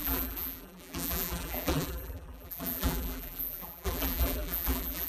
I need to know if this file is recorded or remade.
remade